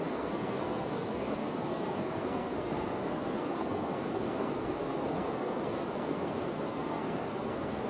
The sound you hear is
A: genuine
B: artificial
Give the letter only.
B